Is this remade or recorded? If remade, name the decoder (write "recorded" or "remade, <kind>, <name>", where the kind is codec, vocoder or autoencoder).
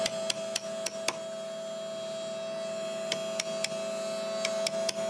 recorded